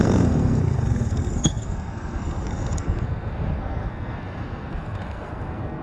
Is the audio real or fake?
fake